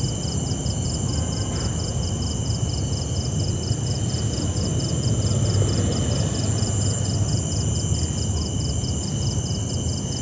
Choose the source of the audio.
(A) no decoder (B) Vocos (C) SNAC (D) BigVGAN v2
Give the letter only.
A